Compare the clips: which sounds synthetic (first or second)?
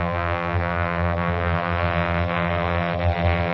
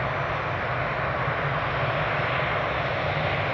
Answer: first